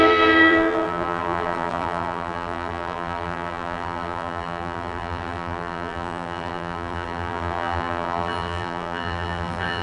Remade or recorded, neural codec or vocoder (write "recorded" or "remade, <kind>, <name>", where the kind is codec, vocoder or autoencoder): remade, vocoder, BigVGAN v2